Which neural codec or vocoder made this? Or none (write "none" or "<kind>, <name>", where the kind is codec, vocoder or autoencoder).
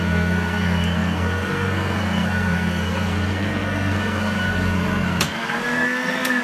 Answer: codec, SNAC